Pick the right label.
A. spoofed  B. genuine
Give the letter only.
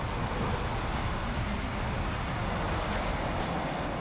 B